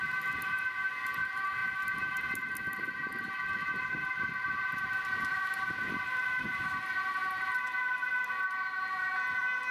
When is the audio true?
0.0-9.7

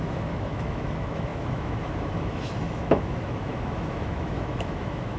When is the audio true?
none

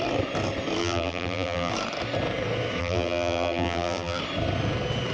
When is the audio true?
0.0-0.8; 1.7-2.8; 4.2-5.1